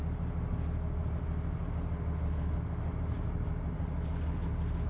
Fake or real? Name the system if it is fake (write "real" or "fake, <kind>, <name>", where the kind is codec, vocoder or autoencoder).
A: real